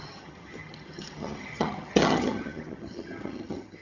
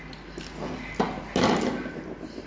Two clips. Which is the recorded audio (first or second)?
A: second